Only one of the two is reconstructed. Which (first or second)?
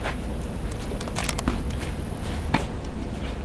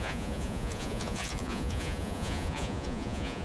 second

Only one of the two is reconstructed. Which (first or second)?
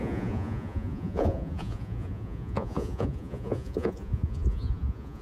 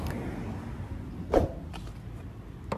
first